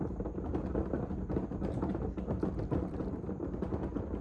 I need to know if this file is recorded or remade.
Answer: recorded